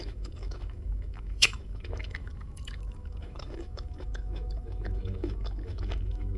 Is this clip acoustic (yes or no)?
no